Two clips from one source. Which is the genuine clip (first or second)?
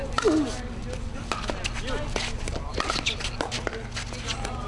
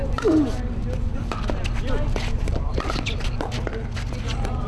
first